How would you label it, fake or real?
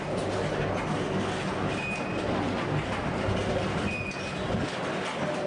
real